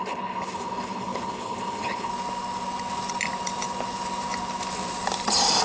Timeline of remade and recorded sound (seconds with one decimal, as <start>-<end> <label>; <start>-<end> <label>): 0.0-2.1 remade; 2.1-5.6 recorded